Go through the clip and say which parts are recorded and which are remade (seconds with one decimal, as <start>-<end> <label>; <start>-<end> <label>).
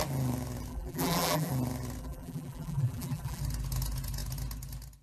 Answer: 0.0-0.7 recorded; 0.7-1.5 remade; 1.5-2.0 recorded; 2.0-3.4 remade; 3.4-5.0 recorded